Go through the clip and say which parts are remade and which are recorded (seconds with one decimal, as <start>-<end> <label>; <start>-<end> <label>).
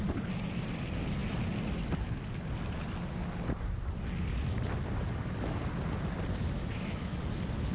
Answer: 0.0-6.6 recorded; 6.6-7.2 remade; 7.2-7.7 recorded